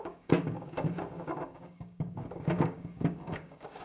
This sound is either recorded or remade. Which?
remade